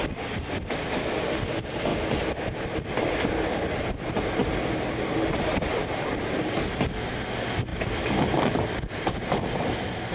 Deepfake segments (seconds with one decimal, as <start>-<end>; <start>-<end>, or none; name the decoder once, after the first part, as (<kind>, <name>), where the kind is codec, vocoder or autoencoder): none